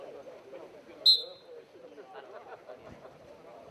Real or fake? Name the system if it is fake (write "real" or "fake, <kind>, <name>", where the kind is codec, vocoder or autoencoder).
real